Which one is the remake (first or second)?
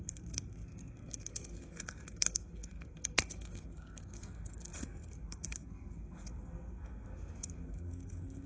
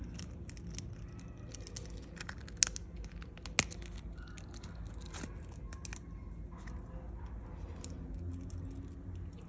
first